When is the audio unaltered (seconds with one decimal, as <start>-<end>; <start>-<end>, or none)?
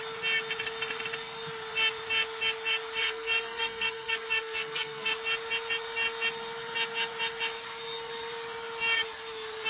0.0-3.0; 5.1-9.7